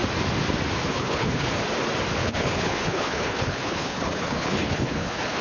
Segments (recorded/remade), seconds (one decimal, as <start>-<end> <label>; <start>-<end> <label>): 0.0-0.8 recorded; 0.8-1.5 remade; 1.5-2.2 recorded; 2.2-5.4 remade